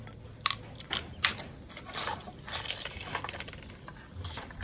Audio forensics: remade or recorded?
recorded